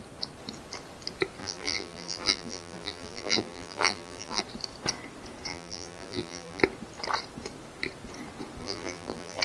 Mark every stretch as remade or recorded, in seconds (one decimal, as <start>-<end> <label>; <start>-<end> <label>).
0.0-1.4 recorded; 1.4-4.4 remade; 4.4-5.5 recorded; 5.5-6.6 remade; 6.6-8.6 recorded; 8.6-9.4 remade